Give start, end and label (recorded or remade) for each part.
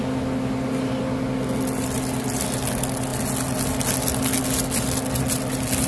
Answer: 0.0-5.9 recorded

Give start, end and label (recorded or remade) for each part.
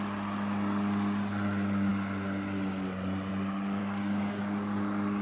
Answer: 0.0-3.8 recorded; 3.8-4.4 remade; 4.4-5.2 recorded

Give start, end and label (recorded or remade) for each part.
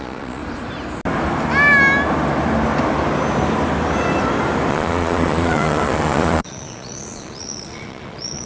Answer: 0.0-0.4 remade; 0.4-4.7 recorded; 4.7-8.5 remade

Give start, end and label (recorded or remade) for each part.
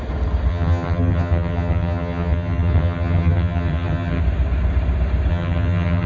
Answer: 0.0-0.5 recorded; 0.5-4.2 remade; 4.2-5.3 recorded; 5.3-6.1 remade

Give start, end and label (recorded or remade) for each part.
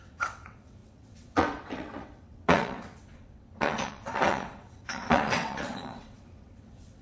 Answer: 0.0-7.0 remade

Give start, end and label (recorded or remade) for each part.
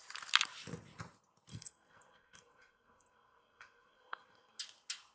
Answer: 0.0-1.5 recorded; 1.5-4.6 remade; 4.6-5.1 recorded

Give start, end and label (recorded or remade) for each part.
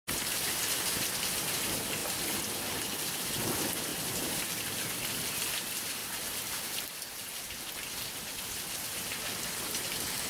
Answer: 0.0-3.9 recorded; 3.9-4.5 remade; 4.5-6.0 recorded; 6.0-7.7 remade; 7.7-10.3 recorded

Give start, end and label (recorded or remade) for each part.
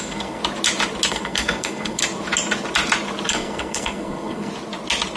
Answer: 0.0-0.4 remade; 0.4-1.1 recorded; 1.1-2.0 remade; 2.0-3.3 recorded; 3.3-4.5 remade; 4.5-5.2 recorded